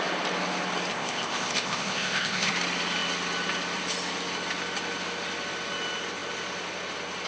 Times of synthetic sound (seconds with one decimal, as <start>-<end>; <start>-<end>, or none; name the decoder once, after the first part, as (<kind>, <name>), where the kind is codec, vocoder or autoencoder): 0.9-2.5 (codec, ZipCodec)